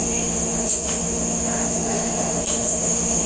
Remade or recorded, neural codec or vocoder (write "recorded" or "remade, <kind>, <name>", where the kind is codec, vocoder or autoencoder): remade, autoencoder, DAC-VAE